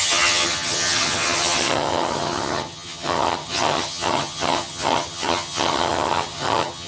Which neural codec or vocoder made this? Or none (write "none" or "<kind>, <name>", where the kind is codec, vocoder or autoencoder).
vocoder, HiFi-GAN